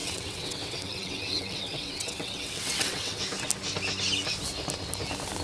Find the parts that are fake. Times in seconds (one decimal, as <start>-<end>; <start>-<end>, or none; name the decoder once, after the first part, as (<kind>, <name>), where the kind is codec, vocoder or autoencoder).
0.0-3.2 (vocoder, WaveNeXt)